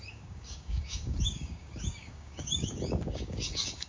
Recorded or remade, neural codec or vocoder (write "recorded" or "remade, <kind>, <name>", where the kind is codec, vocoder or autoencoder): remade, codec, DAC